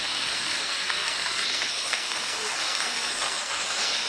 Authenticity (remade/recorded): remade